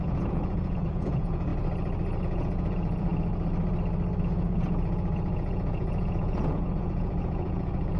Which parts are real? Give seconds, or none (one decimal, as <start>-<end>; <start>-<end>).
1.5-2.2; 3.1-4.2